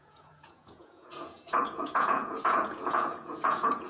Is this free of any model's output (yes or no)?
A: no